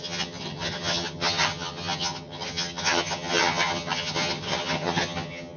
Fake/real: fake